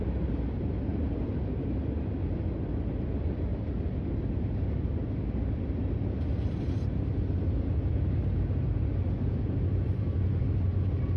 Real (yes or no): yes